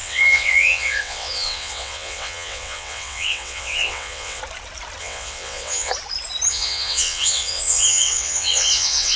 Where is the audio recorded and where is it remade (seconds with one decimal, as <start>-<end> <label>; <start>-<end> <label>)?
0.0-4.4 remade; 4.4-5.0 recorded; 5.0-5.9 remade; 5.9-6.5 recorded; 6.5-9.2 remade